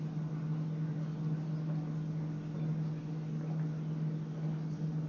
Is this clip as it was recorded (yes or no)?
yes